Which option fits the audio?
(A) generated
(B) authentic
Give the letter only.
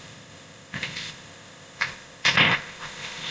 A